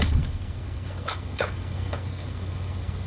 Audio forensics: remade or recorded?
remade